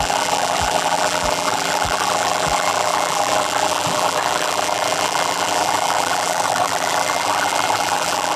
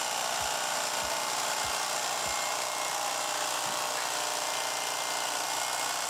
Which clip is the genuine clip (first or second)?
second